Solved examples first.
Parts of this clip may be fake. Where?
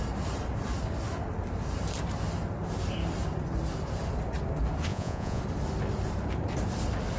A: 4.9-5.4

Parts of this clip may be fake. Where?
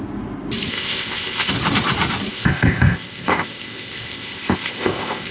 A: 0.7-1.5; 2.3-5.3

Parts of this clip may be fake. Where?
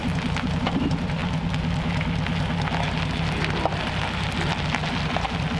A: none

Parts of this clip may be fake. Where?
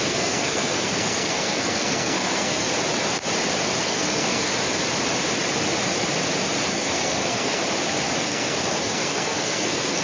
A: 0.0-2.7; 3.8-4.5; 6.7-7.6; 8.2-10.0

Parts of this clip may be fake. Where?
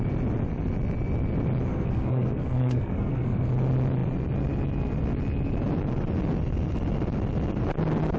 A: 1.7-3.5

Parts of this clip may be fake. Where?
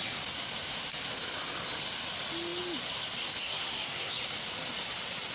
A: 3.4-4.1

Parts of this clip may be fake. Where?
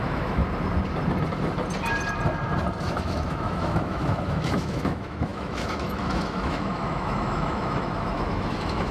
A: 0.0-0.4; 2.8-8.9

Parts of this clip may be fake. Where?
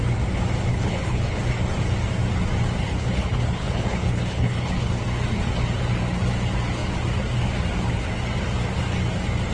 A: 0.7-1.4; 2.8-4.9